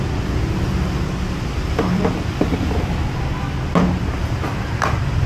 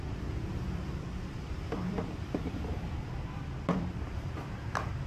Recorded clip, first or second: first